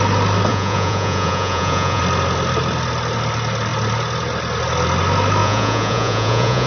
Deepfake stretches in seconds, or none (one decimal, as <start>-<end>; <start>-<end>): 0.5-2.0; 5.4-6.7